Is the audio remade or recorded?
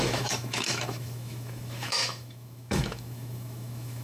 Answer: remade